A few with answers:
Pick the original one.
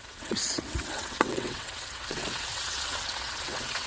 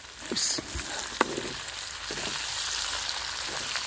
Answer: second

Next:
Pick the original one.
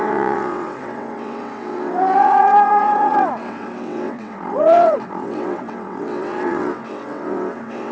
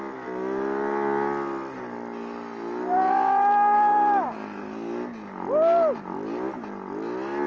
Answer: second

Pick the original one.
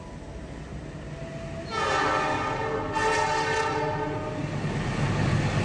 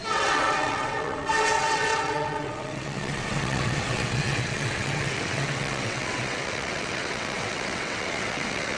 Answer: first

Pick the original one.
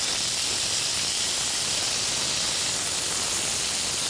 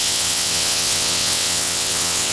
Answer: first